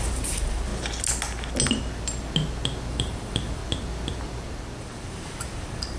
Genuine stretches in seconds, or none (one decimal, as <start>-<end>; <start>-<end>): 0.7-2.9; 3.6-4.8